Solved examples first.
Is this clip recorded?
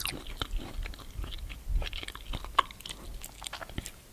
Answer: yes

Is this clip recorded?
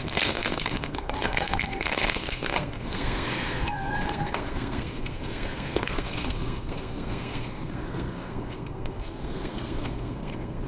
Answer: no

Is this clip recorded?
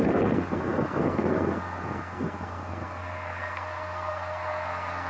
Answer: no